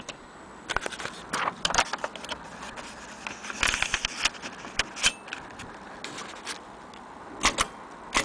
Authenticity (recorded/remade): recorded